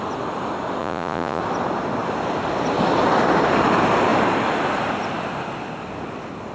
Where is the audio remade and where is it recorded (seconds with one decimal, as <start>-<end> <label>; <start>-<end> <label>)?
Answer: 0.0-0.8 recorded; 0.8-1.4 remade; 1.4-6.5 recorded